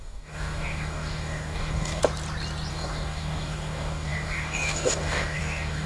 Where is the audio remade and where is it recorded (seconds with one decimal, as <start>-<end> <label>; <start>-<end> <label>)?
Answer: 0.0-2.0 remade; 2.0-2.7 recorded; 2.7-5.9 remade